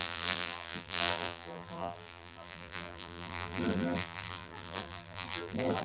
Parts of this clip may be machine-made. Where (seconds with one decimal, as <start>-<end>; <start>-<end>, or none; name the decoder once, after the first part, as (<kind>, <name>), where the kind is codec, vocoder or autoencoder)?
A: 0.0-5.8 (vocoder, BigVGAN v2)